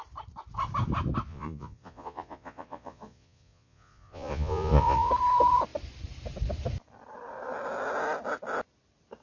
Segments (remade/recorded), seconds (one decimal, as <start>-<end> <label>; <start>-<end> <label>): 0.0-1.3 recorded; 1.3-5.1 remade; 5.1-9.2 recorded